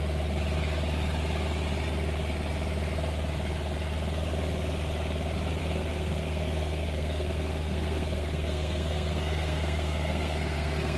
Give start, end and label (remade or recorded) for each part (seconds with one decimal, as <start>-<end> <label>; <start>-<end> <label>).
0.0-5.6 recorded; 5.6-11.0 remade

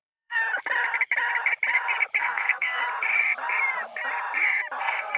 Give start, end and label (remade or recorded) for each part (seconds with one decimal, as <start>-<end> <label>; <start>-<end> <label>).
0.0-0.4 remade; 0.4-2.2 recorded; 2.2-2.8 remade; 2.8-4.8 recorded; 4.8-5.2 remade